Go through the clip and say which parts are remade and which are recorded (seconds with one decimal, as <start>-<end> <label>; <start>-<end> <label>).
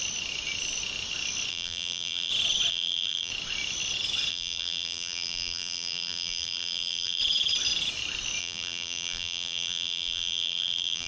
0.0-1.5 recorded; 1.5-2.3 remade; 2.3-2.7 recorded; 2.7-3.3 remade; 3.3-4.3 recorded; 4.3-7.2 remade; 7.2-8.4 recorded; 8.4-11.1 remade